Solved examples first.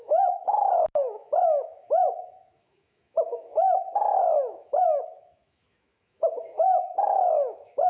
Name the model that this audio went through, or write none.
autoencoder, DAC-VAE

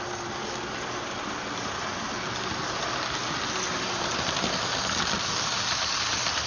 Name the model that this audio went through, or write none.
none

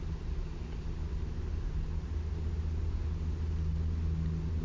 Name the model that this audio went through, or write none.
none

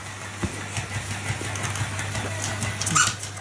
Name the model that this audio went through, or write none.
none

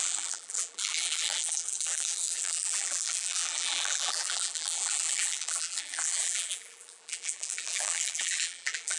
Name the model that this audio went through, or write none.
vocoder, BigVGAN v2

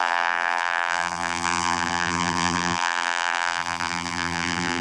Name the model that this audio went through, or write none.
vocoder, BigVGAN v2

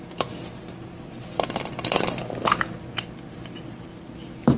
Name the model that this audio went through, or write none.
none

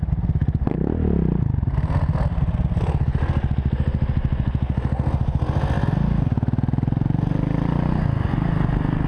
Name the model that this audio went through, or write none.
none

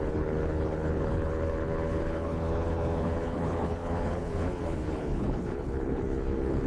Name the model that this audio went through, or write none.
codec, HILCodec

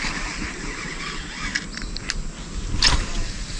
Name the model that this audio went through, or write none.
none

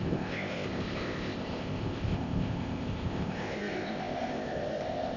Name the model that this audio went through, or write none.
codec, ZipCodec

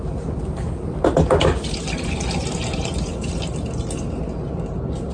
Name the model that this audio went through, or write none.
none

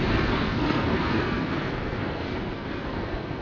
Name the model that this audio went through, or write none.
codec, SNAC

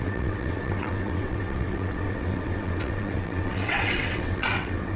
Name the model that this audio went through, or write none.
vocoder, WaveNeXt